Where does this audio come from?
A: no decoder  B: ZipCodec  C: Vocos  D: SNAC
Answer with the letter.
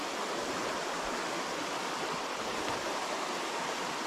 A